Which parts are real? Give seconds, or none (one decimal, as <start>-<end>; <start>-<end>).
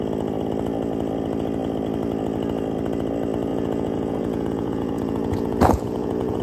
0.0-3.5